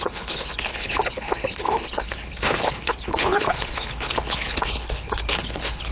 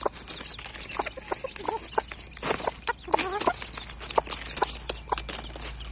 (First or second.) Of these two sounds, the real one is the second